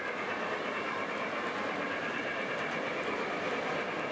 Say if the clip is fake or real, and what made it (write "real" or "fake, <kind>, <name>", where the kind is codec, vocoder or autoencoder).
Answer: real